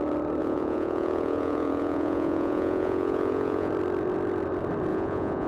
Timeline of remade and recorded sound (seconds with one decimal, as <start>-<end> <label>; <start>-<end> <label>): 0.0-0.4 recorded; 0.4-3.7 remade; 3.7-4.9 recorded; 4.9-5.5 remade